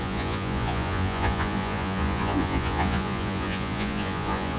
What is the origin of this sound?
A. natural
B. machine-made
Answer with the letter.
B